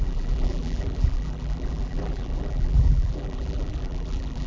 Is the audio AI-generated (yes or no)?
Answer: yes